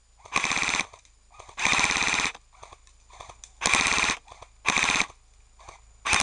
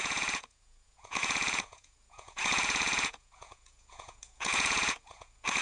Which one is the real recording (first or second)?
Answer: first